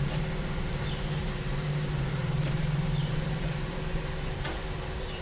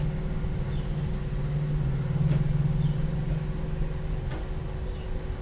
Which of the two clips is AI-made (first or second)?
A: first